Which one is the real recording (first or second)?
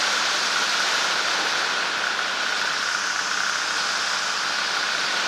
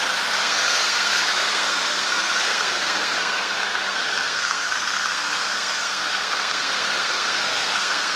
first